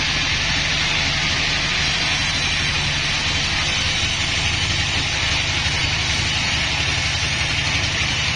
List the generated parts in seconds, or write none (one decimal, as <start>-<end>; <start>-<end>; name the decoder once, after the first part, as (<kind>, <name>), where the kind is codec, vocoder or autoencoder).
none